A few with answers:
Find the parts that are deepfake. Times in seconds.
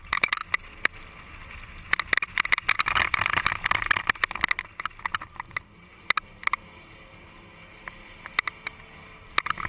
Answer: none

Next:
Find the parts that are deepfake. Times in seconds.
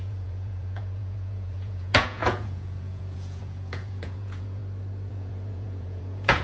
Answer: 0.0-4.6 (vocoder, Vocos); 5.1-6.4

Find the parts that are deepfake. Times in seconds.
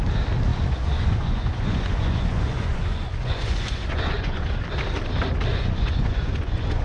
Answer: 0.5-4.6 (vocoder, Vocos); 5.5-6.8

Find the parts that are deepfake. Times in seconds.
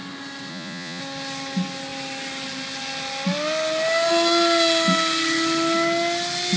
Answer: 0.5-1.0 (vocoder, Vocos)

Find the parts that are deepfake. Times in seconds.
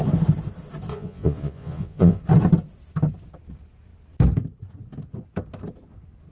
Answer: 0.9-2.2 (vocoder, Vocos)